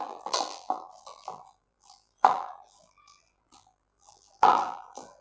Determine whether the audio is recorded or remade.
remade